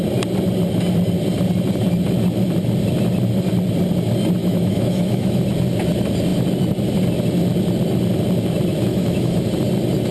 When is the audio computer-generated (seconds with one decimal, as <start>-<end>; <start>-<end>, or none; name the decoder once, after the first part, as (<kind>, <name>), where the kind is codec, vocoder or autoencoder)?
4.4-5.4 (autoencoder, DAC-VAE); 8.9-9.4